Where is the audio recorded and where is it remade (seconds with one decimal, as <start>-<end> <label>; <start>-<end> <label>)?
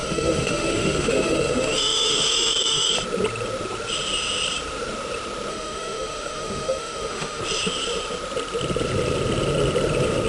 0.0-2.9 remade; 2.9-5.5 recorded; 5.5-7.4 remade; 7.4-10.3 recorded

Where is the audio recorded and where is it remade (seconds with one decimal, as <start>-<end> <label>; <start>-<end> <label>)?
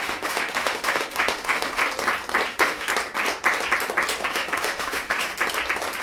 0.0-1.8 remade; 1.8-2.5 recorded; 2.5-2.9 remade; 2.9-4.2 recorded; 4.2-5.3 remade; 5.3-6.0 recorded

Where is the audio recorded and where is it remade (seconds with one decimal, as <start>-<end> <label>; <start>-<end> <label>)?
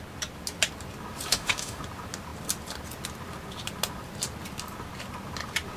0.0-1.3 recorded; 1.3-1.8 remade; 1.8-5.8 recorded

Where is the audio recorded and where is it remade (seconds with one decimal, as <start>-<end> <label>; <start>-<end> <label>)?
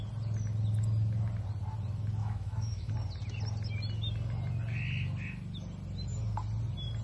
0.0-2.2 recorded; 2.2-2.9 remade; 2.9-7.0 recorded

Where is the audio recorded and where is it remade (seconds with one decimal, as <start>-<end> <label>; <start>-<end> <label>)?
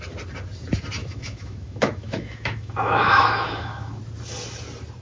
0.0-1.0 recorded; 1.0-4.0 remade; 4.0-5.0 recorded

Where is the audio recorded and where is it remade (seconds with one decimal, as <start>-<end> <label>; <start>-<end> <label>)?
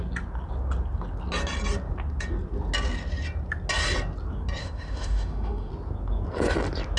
0.0-4.6 recorded; 4.6-5.7 remade; 5.7-7.0 recorded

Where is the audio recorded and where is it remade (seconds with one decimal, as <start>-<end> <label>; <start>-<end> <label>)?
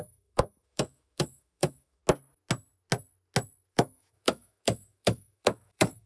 0.0-2.0 remade; 2.0-3.7 recorded; 3.7-6.1 remade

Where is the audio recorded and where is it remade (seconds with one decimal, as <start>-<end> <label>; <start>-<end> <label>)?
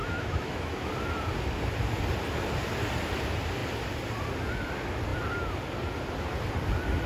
0.0-0.9 remade; 0.9-7.1 recorded